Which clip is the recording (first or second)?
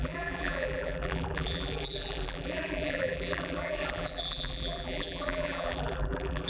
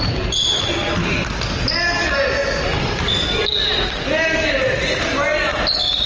second